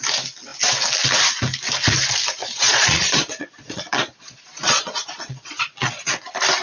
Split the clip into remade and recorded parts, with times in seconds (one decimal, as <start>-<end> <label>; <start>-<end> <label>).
0.0-2.4 recorded; 2.4-5.9 remade; 5.9-6.6 recorded